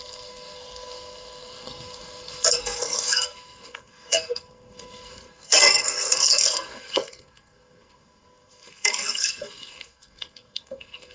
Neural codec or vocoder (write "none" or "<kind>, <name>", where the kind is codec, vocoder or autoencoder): codec, SNAC